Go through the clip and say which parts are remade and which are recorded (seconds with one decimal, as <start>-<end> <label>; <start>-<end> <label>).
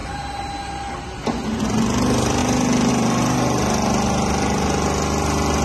0.0-5.6 recorded